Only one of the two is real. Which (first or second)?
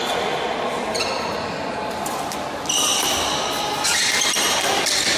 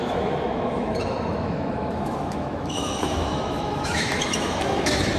first